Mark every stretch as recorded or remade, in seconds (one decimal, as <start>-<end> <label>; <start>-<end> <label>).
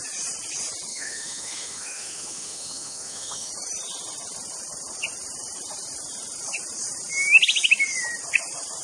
0.0-0.9 recorded; 0.9-3.5 remade; 3.5-8.8 recorded